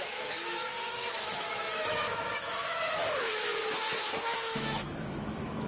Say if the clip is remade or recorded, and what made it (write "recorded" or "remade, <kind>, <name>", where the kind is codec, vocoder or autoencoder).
remade, autoencoder, DAC-VAE